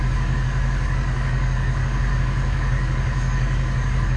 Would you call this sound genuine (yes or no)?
no